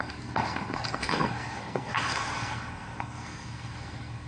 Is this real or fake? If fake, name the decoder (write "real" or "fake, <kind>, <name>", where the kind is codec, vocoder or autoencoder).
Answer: fake, codec, SNAC